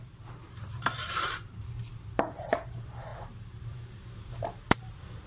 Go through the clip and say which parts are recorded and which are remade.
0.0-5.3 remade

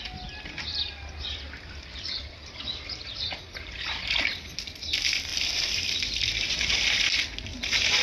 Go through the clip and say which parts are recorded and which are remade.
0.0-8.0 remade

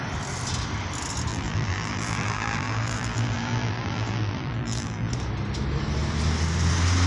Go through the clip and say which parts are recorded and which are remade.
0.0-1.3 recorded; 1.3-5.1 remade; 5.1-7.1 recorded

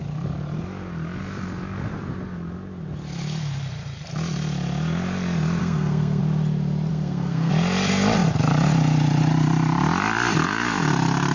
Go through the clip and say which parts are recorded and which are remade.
0.0-5.6 recorded; 5.6-6.2 remade; 6.2-6.9 recorded; 6.9-7.5 remade; 7.5-11.3 recorded

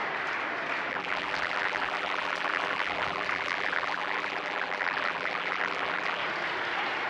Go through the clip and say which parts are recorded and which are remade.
0.0-0.9 recorded; 0.9-6.2 remade; 6.2-7.1 recorded

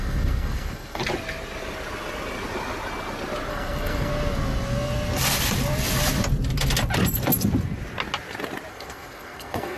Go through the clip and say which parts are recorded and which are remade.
0.0-1.0 remade; 1.0-3.5 recorded; 3.5-4.1 remade; 4.1-8.7 recorded; 8.7-9.8 remade